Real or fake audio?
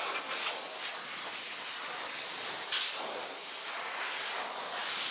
real